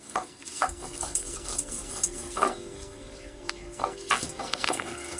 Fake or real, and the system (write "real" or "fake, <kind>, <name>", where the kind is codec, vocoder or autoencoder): fake, codec, SNAC